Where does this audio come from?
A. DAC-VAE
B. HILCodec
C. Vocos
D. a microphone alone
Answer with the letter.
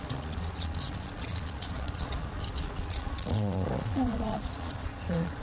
C